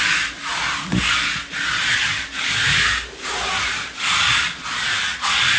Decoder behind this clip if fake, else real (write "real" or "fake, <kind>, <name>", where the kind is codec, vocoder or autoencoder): real